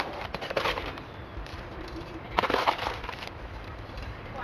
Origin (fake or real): fake